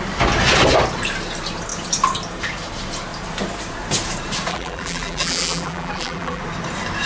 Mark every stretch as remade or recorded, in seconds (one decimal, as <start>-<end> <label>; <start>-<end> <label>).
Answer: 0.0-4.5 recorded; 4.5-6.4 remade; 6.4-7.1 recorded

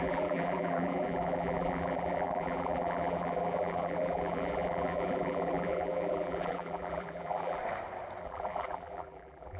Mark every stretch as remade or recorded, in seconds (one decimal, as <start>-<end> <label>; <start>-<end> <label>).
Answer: 0.0-7.6 remade; 7.6-8.2 recorded; 8.2-9.6 remade

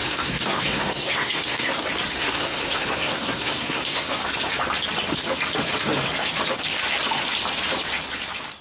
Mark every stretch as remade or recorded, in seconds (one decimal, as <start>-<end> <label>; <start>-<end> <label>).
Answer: 0.0-1.7 remade; 1.7-2.2 recorded; 2.2-4.2 remade; 4.2-8.6 recorded

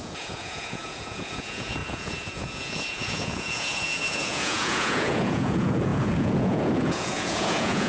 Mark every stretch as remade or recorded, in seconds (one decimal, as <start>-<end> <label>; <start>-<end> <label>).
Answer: 0.0-7.9 remade